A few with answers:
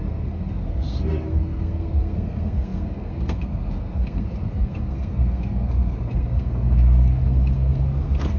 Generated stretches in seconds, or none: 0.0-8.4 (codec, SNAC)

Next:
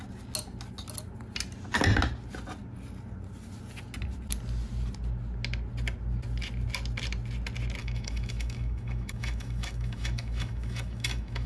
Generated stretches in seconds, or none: 7.8-11.5 (autoencoder, DAC-VAE)